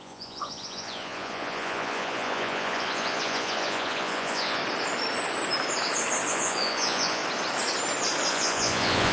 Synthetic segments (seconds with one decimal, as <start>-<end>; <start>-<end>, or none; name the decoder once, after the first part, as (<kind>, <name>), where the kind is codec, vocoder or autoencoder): 0.0-4.6 (vocoder, Vocos); 6.3-7.2; 8.3-9.1